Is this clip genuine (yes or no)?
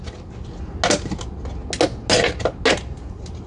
yes